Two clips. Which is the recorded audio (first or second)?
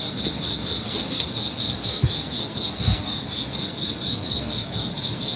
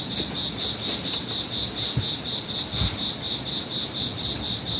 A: second